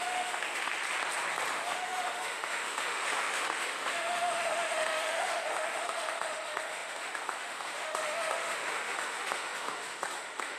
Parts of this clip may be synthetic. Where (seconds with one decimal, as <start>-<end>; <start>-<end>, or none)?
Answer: 0.0-0.7; 1.5-10.6